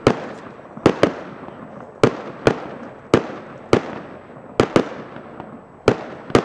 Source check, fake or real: real